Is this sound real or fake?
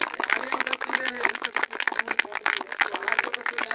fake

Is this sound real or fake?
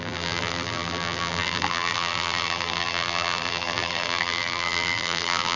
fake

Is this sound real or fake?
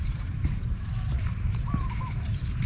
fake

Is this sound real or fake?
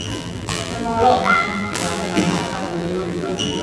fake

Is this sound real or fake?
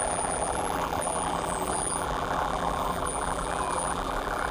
fake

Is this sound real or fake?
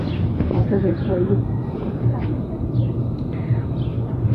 fake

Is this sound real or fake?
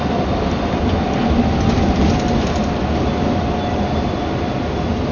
real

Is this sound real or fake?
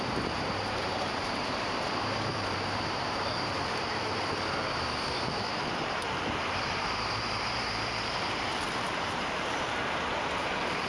fake